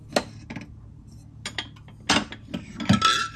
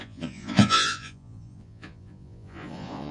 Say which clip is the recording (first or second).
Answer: first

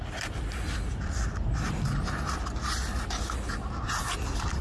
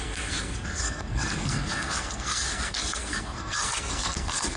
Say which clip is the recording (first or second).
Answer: first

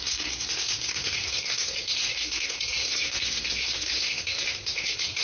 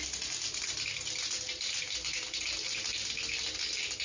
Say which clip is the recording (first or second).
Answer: second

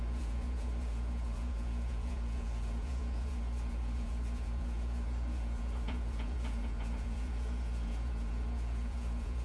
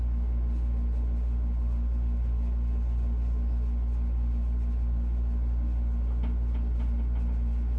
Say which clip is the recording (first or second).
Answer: second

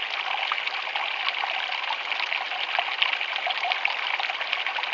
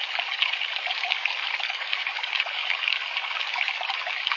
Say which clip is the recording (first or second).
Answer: first